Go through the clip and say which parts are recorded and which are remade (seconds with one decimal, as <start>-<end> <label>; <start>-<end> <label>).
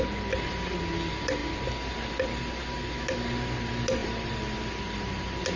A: 0.0-4.0 recorded; 4.0-5.1 remade; 5.1-5.6 recorded